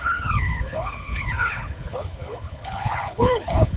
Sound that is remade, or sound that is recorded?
remade